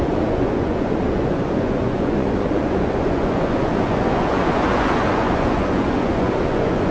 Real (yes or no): no